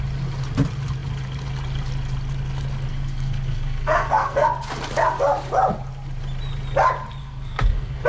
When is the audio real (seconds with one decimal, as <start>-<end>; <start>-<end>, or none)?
0.0-2.9; 4.5-7.2